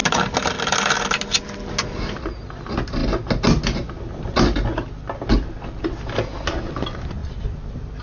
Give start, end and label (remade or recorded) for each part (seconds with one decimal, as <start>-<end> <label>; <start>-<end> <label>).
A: 0.0-8.0 recorded